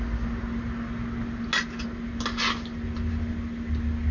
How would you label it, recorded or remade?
recorded